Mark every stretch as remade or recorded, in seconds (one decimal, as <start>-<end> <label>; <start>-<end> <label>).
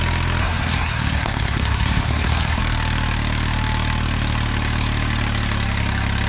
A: 0.0-0.4 recorded; 0.4-2.6 remade; 2.6-6.3 recorded